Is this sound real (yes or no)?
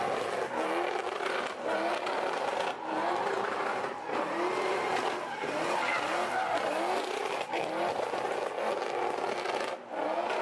yes